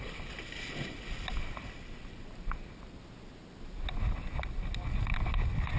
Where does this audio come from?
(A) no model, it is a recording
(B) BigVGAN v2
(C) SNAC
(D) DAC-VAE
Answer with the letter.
A